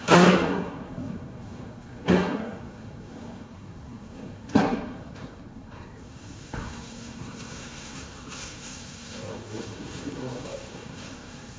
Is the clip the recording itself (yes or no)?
no